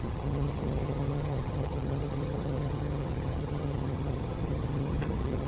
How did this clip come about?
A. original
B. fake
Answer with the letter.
B